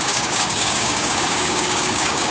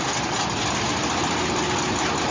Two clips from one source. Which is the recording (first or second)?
second